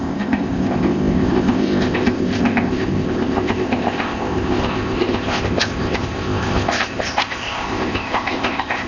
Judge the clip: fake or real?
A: fake